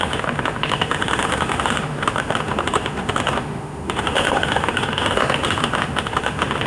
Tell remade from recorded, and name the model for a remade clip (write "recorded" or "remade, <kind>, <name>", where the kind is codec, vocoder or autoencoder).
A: remade, autoencoder, DAC-VAE